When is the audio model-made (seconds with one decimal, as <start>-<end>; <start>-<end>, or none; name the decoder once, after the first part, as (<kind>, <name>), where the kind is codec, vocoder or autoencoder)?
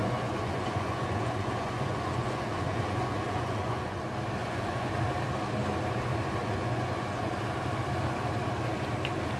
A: 0.0-4.0 (vocoder, Vocos); 4.4-5.0; 6.4-7.3